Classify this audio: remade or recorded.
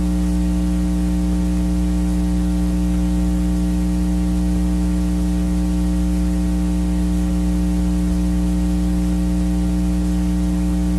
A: recorded